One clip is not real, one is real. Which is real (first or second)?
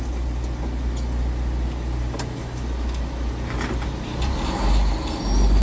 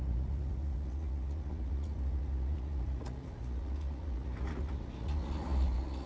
first